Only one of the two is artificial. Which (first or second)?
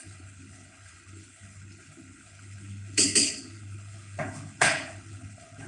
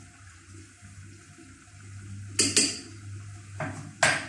first